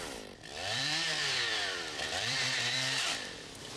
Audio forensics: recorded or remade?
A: remade